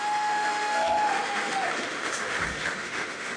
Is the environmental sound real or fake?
fake